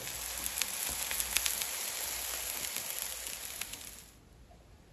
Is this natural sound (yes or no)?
yes